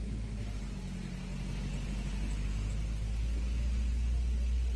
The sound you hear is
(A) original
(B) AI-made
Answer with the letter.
A